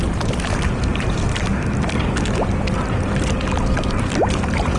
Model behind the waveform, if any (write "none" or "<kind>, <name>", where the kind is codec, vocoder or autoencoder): none